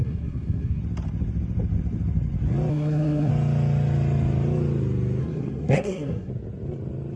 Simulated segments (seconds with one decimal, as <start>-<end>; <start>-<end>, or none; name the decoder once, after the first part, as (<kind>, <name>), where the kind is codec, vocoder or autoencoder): 0.0-0.8 (codec, SNAC); 2.7-3.3; 5.2-6.3